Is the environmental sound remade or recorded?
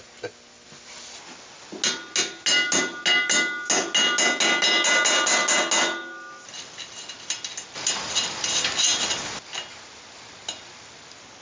recorded